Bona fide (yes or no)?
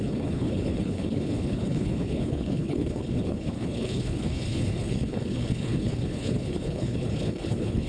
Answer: no